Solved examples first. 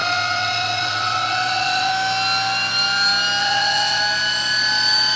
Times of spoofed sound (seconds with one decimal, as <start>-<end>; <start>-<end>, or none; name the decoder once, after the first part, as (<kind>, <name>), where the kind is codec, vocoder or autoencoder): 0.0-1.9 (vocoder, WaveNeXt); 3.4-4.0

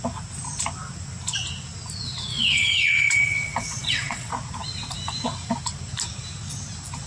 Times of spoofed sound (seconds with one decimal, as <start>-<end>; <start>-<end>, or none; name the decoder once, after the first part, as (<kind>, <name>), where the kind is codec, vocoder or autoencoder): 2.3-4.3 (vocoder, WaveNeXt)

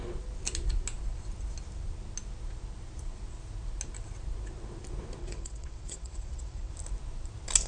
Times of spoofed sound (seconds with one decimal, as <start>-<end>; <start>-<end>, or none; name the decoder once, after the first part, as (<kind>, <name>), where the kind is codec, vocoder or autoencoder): 5.2-6.7 (vocoder, WaveNeXt)